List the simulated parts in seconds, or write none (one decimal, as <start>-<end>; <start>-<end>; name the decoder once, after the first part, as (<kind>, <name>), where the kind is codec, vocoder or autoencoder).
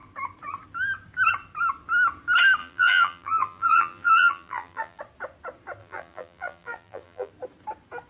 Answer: 2.6-5.0 (vocoder, BigVGAN v2); 5.8-7.3